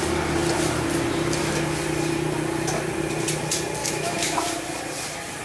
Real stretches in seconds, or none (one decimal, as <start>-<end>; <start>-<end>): 0.0-3.8; 4.4-5.4